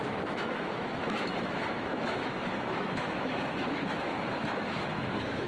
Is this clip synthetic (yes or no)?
yes